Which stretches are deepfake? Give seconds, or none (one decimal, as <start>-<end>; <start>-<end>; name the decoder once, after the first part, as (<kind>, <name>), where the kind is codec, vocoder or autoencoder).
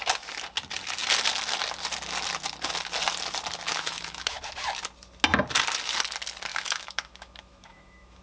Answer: 3.7-4.4 (autoencoder, DAC-VAE); 6.5-8.2